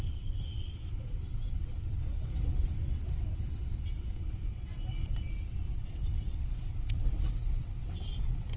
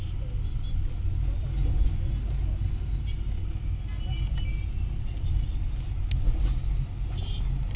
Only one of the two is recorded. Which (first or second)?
second